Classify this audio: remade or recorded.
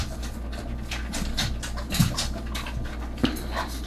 recorded